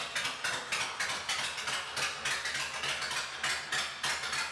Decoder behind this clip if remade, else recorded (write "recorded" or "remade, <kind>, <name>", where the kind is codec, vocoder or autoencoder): recorded